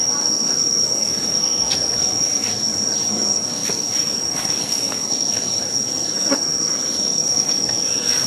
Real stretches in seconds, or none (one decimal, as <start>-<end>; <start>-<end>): 2.5-3.1